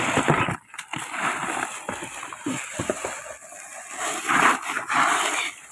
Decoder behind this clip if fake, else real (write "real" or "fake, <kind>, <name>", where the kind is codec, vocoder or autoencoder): real